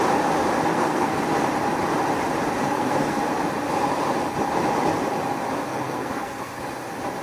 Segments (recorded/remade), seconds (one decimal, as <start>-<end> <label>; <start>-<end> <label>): 0.0-0.7 recorded; 0.7-1.2 remade; 1.2-2.6 recorded; 2.6-3.2 remade; 3.2-5.7 recorded; 5.7-6.5 remade; 6.5-7.2 recorded